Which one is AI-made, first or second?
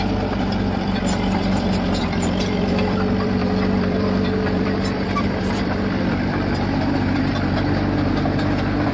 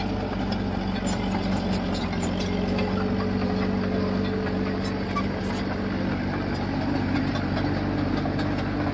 first